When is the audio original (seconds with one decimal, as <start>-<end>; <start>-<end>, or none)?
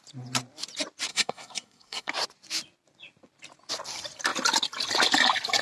0.0-1.1; 2.1-5.6